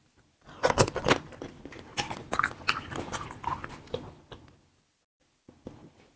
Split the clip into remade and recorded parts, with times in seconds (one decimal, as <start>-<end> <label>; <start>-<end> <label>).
0.0-6.2 recorded